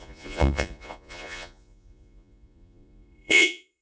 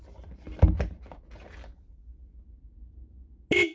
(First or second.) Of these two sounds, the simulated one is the first